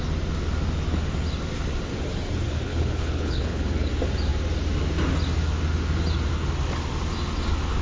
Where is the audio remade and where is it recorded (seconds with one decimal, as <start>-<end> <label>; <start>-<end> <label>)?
0.0-2.7 recorded; 2.7-3.9 remade; 3.9-7.8 recorded